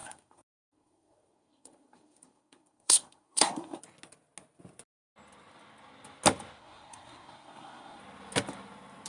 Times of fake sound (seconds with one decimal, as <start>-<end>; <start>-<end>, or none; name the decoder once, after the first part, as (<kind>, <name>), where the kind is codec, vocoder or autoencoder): 0.0-3.8 (codec, SNAC); 6.6-8.0